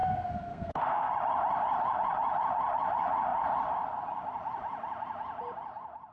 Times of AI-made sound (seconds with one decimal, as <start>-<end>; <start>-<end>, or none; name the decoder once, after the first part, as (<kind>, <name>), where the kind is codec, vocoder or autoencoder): 0.0-1.1 (codec, SNAC)